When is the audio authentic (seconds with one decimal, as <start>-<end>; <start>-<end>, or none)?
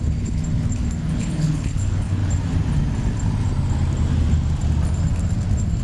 0.4-1.1; 2.2-5.8